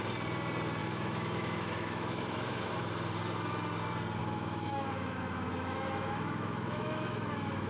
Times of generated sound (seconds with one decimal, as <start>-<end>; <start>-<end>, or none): 0.8-2.7; 4.2-7.7